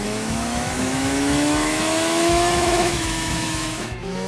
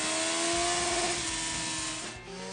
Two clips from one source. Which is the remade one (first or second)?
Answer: first